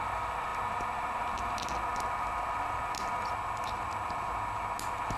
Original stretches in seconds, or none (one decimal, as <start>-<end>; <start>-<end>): 0.0-5.2